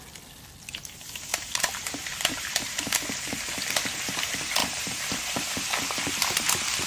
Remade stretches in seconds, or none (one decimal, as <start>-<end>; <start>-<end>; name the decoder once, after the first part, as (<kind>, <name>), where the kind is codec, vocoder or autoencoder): 1.3-2.8 (vocoder, BigVGAN v2)